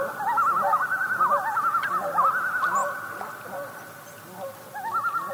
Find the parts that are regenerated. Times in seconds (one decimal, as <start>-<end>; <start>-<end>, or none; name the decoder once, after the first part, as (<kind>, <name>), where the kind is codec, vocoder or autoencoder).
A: none